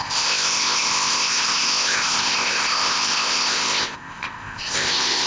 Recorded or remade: remade